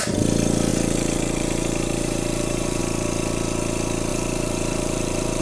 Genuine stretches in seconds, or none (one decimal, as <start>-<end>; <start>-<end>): 0.0-0.7; 2.8-4.1